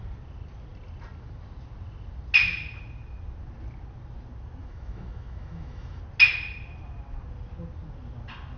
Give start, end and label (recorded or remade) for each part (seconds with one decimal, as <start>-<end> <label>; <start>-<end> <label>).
0.0-4.6 recorded; 4.6-6.0 remade; 6.0-8.6 recorded